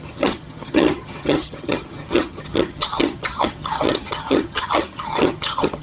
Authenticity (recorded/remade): remade